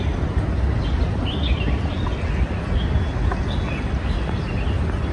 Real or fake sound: real